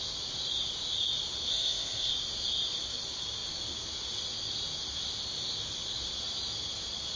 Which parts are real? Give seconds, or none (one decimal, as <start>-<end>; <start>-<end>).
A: 0.0-1.5; 2.1-7.2